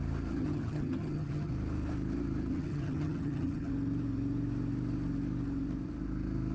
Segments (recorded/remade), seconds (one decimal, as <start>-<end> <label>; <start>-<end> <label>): 0.0-0.4 recorded; 0.4-1.5 remade; 1.5-2.5 recorded; 2.5-3.7 remade; 3.7-6.5 recorded